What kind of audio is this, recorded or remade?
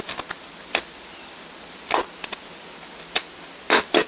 recorded